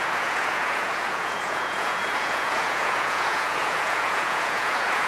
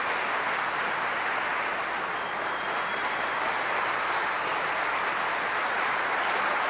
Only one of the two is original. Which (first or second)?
second